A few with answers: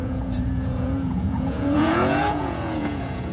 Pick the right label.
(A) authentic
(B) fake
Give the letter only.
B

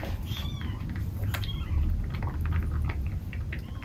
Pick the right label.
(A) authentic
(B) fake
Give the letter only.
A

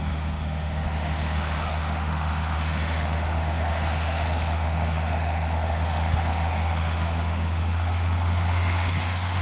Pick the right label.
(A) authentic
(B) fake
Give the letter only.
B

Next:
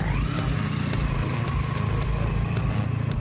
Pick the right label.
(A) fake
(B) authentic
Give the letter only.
B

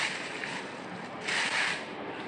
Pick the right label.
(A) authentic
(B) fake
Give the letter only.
B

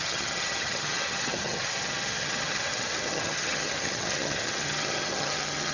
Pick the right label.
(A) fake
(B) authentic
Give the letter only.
A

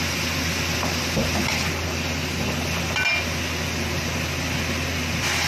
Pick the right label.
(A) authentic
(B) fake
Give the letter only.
A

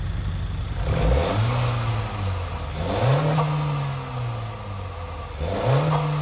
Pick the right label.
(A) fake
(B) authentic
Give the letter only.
B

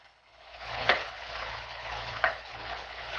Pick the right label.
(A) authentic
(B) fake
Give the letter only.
B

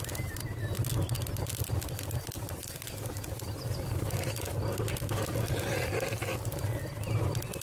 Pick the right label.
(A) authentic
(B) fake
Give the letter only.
A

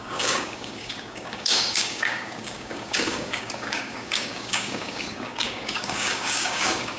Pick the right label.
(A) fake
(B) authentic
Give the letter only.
A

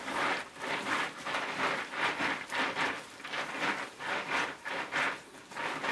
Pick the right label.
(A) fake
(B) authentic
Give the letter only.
B